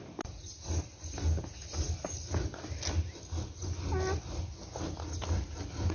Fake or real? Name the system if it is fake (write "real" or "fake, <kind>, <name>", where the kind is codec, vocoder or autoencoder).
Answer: real